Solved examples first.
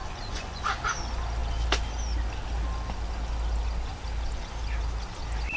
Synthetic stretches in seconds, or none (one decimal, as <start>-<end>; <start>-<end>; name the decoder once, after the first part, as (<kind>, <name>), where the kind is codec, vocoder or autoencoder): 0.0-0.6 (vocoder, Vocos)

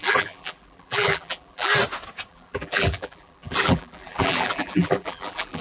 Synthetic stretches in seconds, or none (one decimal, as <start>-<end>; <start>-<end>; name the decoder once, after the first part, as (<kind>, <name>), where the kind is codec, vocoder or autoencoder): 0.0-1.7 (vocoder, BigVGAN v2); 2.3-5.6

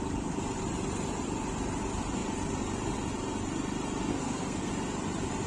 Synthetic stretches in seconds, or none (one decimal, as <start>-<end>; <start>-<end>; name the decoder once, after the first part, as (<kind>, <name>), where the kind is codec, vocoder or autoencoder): 4.1-4.7 (codec, SNAC)

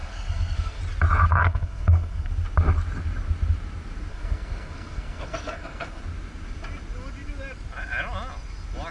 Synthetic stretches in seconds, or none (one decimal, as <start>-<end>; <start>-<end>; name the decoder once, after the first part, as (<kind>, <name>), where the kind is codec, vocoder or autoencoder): 0.0-0.8 (codec, SNAC); 1.4-2.3; 4.1-6.0

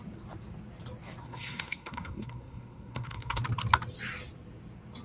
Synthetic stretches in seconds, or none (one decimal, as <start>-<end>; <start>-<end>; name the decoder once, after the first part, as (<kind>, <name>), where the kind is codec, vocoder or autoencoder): 1.2-3.4 (codec, SNAC)

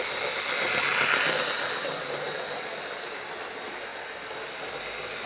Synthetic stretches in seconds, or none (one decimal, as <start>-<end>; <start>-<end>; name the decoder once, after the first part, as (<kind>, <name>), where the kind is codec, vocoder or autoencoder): none